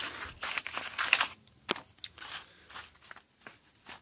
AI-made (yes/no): no